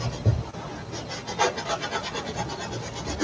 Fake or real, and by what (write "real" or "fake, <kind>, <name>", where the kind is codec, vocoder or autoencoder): real